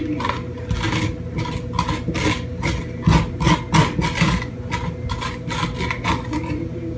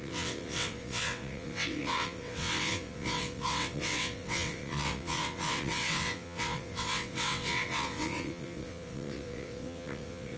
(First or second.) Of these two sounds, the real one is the first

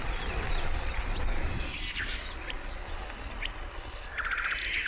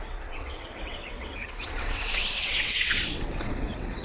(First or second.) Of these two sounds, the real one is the first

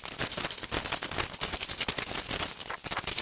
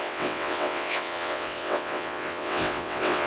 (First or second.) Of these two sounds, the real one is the first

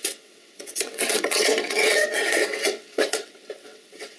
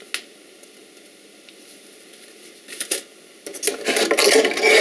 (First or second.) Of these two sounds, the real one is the second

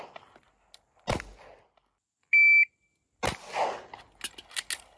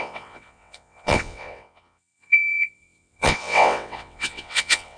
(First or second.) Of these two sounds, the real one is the first